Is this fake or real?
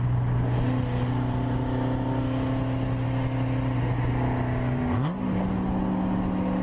real